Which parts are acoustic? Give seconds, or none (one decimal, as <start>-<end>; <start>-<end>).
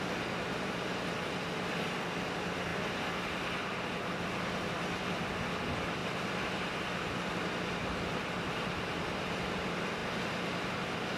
0.0-11.2